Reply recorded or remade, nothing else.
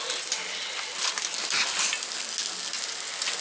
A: recorded